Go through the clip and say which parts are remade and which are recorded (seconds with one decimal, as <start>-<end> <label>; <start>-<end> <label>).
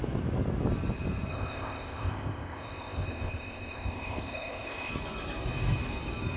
0.0-1.3 recorded; 1.3-4.9 remade; 4.9-6.4 recorded